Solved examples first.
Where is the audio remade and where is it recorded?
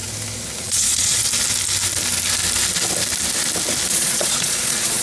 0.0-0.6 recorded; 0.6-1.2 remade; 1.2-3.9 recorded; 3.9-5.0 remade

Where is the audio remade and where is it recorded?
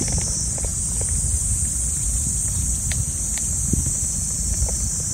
0.0-5.1 recorded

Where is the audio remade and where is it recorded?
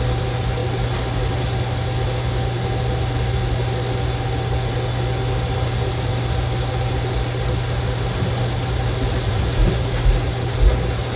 0.0-11.2 recorded